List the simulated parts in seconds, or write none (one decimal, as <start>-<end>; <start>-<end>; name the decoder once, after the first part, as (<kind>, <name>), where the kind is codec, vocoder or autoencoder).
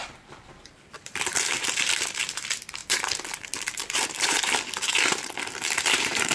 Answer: 0.0-2.2 (vocoder, BigVGAN v2); 2.8-6.3